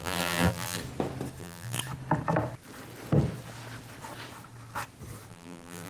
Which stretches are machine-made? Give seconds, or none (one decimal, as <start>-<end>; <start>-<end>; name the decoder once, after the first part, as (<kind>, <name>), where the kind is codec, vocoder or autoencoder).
0.0-0.8 (vocoder, BigVGAN v2); 1.4-1.8; 5.3-5.9